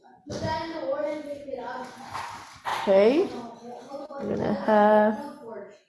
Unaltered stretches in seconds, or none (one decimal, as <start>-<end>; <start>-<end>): 0.0-5.9